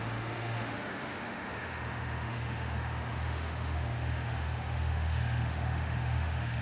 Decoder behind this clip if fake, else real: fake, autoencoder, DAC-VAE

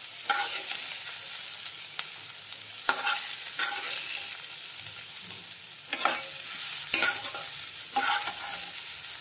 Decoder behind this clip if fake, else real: real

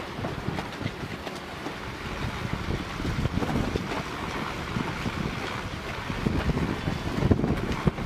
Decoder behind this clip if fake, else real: real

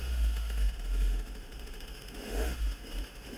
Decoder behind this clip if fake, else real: fake, autoencoder, DAC-VAE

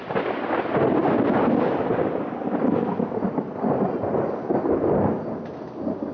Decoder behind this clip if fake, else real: real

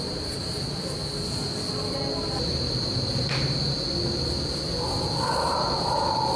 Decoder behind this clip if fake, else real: real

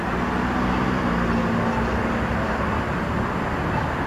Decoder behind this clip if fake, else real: real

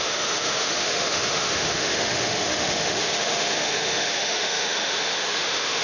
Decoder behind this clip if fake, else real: fake, autoencoder, DAC-VAE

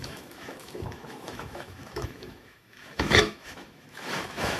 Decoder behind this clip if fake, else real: fake, autoencoder, DAC-VAE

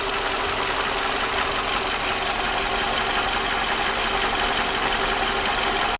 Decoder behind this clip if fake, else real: real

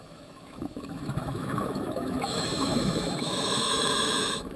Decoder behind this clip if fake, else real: fake, autoencoder, DAC-VAE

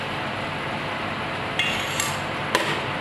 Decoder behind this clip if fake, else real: real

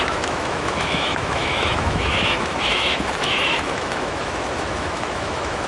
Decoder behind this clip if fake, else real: fake, autoencoder, DAC-VAE